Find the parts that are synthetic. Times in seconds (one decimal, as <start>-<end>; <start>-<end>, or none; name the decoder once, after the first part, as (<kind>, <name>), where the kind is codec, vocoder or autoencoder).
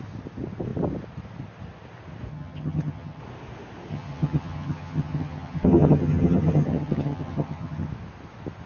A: 2.3-3.2 (vocoder, HiFi-GAN); 3.9-7.9